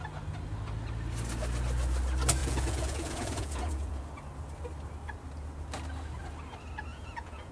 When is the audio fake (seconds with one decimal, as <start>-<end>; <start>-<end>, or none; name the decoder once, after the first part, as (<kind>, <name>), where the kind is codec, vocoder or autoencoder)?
2.4-4.0 (vocoder, Vocos); 6.9-7.5